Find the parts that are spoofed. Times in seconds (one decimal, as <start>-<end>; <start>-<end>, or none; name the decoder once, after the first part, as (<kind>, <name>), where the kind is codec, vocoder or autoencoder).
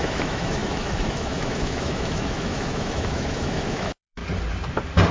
0.0-4.2 (autoencoder, DAC-VAE)